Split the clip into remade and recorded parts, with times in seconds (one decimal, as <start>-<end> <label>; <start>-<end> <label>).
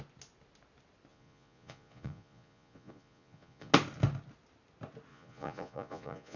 0.0-1.1 recorded; 1.1-3.7 remade; 3.7-5.1 recorded; 5.1-6.4 remade